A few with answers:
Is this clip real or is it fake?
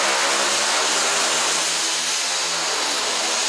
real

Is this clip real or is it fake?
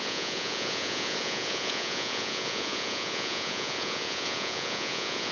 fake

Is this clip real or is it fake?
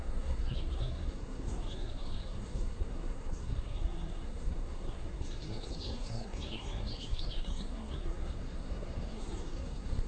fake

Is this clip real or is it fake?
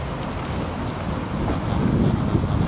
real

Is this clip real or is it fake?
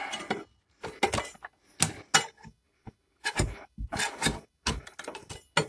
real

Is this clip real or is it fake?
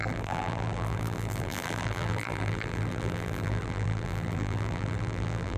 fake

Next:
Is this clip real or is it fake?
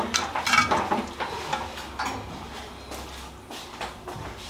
real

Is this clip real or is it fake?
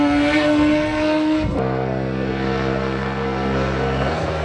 fake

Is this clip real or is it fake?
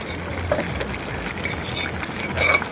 real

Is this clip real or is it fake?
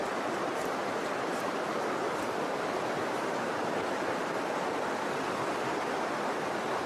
fake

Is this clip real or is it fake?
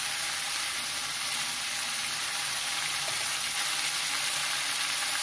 real